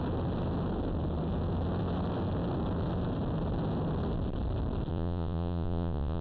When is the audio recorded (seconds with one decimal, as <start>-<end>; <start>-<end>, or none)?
0.0-4.9